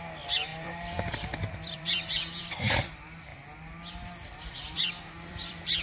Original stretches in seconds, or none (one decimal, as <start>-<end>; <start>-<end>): 3.3-4.5